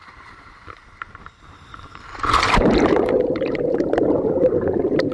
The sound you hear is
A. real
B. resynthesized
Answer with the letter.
B